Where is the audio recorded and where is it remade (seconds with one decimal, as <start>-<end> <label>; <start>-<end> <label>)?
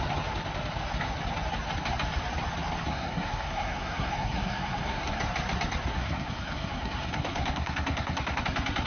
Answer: 0.0-2.9 recorded; 2.9-5.2 remade; 5.2-5.9 recorded; 5.9-8.4 remade; 8.4-8.9 recorded